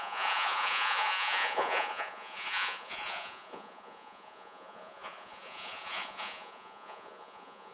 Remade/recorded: remade